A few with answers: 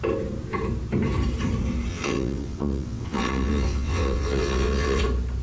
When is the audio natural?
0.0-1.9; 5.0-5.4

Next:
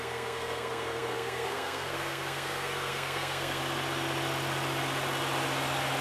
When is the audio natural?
3.6-6.0

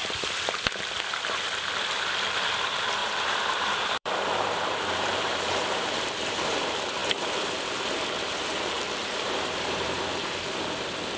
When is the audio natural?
0.0-3.0; 6.6-9.0; 10.0-11.2

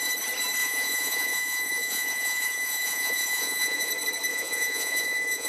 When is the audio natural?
0.0-0.6; 3.9-4.3

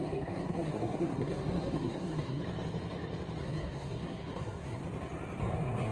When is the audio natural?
2.4-3.4; 4.8-5.5

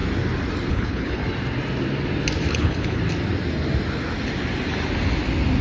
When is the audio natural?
0.0-0.7; 1.2-2.5; 3.0-5.6

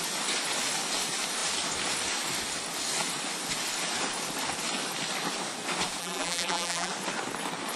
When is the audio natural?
0.0-6.0; 6.9-7.8

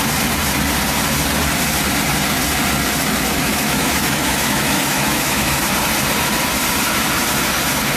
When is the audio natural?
0.0-3.4; 5.6-8.0